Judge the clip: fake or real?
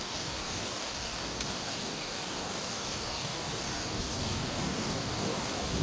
fake